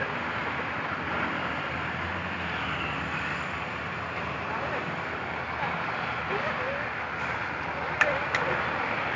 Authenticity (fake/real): real